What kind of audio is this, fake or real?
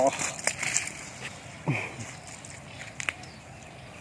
real